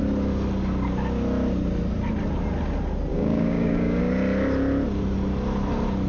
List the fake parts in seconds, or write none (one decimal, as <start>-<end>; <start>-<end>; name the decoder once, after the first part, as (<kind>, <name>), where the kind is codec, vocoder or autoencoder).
3.1-4.0 (codec, DAC)